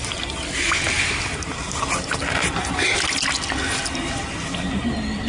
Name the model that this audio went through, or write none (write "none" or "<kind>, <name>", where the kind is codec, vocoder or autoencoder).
none